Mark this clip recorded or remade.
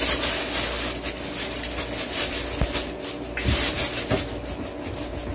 recorded